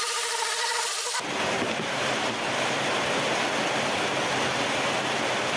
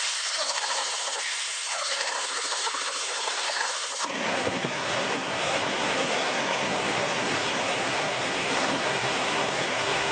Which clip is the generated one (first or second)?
second